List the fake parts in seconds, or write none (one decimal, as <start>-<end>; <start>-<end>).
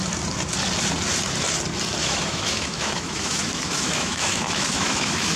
2.0-5.4